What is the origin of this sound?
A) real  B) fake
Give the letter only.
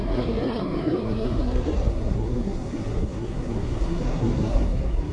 B